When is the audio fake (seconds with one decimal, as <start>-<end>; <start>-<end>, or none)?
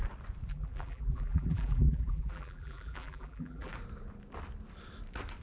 0.5-3.7